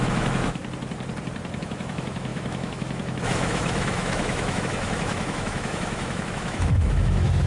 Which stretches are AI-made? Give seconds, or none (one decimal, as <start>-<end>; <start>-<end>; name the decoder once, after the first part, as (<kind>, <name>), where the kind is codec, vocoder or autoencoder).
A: 0.0-0.6 (autoencoder, DAC-VAE); 1.6-7.5